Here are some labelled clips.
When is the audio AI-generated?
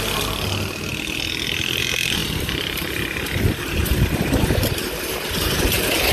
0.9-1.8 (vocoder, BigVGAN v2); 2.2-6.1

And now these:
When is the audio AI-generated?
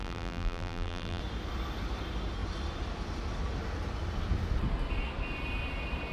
0.0-1.2 (vocoder, BigVGAN v2)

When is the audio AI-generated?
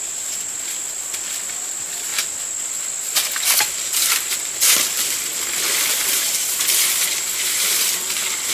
0.0-5.3 (vocoder, BigVGAN v2); 6.0-8.5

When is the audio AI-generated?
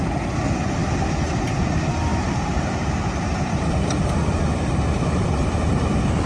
0.8-1.4 (vocoder, BigVGAN v2); 2.1-6.3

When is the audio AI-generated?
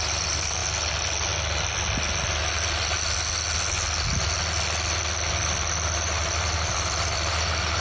0.0-0.6 (vocoder, BigVGAN v2); 5.3-7.8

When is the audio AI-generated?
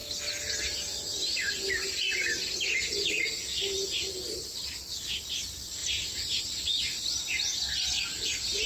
5.8-6.4 (vocoder, BigVGAN v2)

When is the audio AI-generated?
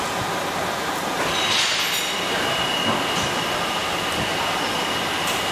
3.8-4.4 (vocoder, BigVGAN v2)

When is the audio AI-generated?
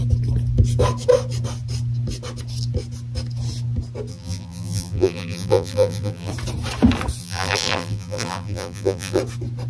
4.1-6.3 (vocoder, BigVGAN v2); 7.2-9.2